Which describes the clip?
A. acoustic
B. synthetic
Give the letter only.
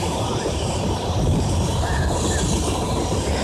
B